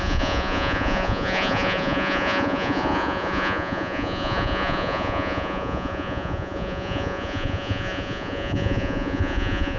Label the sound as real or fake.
fake